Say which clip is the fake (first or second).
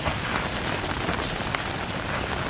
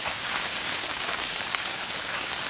second